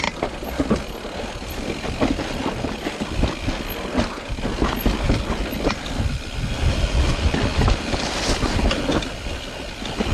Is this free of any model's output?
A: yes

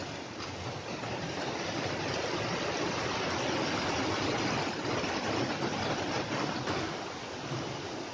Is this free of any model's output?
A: yes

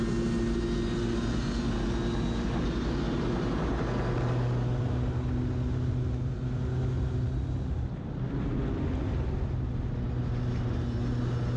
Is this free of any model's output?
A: yes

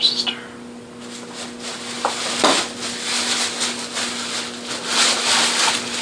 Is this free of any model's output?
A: yes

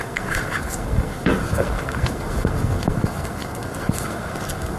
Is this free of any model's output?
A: no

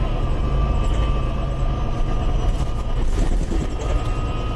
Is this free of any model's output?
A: yes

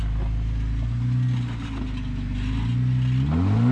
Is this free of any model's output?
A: yes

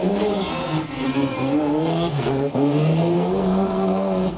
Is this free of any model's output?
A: no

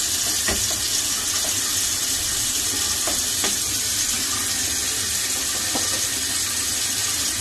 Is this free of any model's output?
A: yes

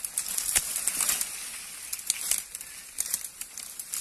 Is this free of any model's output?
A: yes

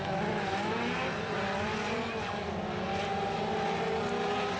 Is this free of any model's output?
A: yes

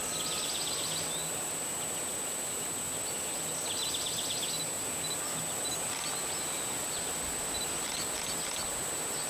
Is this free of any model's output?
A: yes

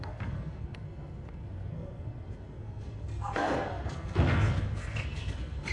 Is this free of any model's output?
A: no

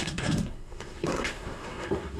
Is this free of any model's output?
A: no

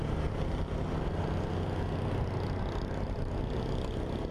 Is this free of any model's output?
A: yes